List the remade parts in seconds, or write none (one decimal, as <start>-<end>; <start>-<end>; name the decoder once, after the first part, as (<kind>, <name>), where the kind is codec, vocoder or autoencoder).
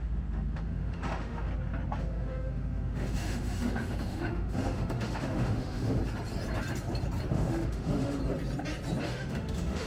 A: 0.0-1.5 (autoencoder, DAC-VAE); 2.0-6.0; 7.3-8.2; 9.0-9.9